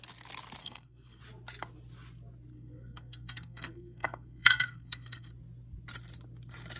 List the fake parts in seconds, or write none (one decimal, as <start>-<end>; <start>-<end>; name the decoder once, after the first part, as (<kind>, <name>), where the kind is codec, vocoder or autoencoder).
0.6-1.2 (codec, SNAC); 2.5-5.3